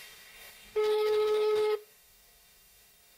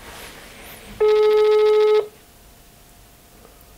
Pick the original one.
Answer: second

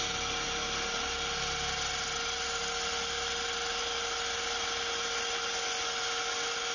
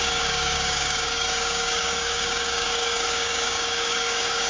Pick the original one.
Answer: first